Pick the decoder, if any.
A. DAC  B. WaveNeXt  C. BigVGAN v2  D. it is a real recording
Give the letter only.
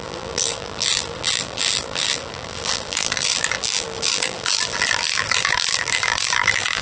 C